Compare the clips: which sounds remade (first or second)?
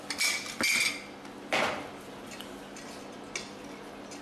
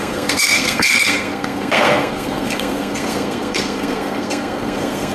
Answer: second